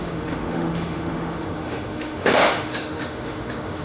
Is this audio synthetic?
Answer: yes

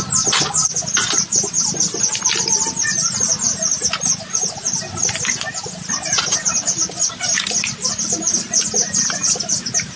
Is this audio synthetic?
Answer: no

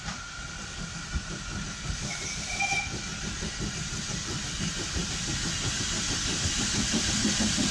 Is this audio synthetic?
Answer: no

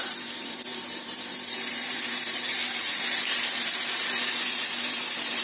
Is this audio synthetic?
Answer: yes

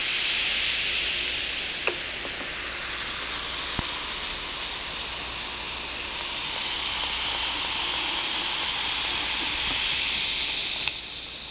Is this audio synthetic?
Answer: no